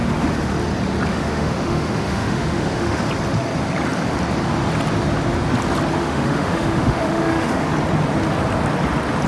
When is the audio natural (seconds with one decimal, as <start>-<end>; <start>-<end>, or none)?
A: 0.5-1.1; 3.0-6.0; 7.7-9.3